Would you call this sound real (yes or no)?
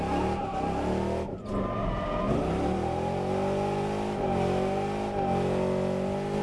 yes